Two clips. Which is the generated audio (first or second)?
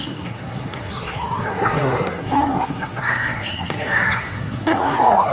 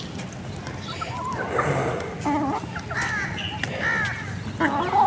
first